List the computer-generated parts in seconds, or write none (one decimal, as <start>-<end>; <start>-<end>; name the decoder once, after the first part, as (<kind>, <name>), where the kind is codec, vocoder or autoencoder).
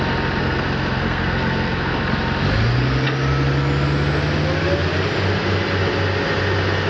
0.4-2.0 (codec, SNAC)